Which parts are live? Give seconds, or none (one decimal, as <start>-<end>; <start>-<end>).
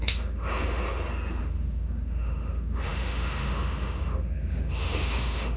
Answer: 0.8-1.4